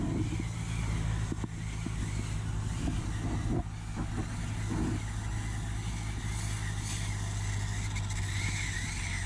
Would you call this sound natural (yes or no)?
yes